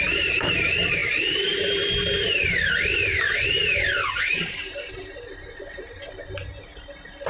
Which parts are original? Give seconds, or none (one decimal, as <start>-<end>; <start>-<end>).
6.7-7.3